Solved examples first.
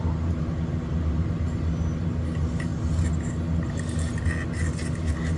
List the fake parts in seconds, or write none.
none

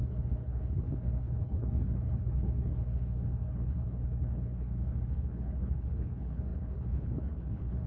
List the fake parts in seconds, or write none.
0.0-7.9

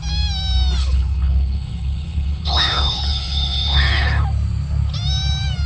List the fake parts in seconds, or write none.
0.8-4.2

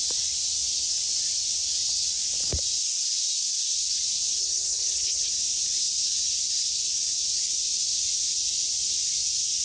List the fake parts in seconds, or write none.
4.4-5.3

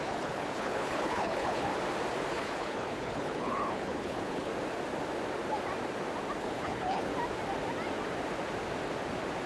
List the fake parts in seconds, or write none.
0.0-1.7; 2.3-4.5; 6.4-7.1

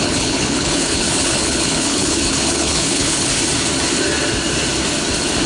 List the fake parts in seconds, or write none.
0.0-3.3

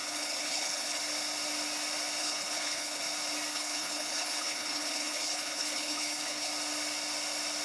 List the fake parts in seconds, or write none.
0.0-1.0; 2.2-3.0; 3.5-6.5